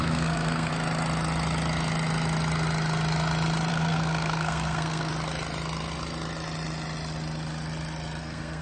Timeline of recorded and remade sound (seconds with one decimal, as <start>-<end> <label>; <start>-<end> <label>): 0.0-0.7 remade; 0.7-3.7 recorded; 3.7-5.1 remade; 5.1-8.2 recorded; 8.2-8.6 remade